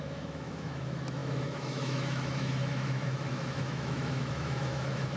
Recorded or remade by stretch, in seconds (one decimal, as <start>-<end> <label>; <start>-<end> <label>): 0.0-5.2 remade